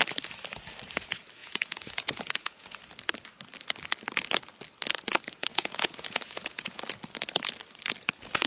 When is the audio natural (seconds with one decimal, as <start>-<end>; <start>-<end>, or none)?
0.0-1.4; 2.8-5.5; 6.8-8.5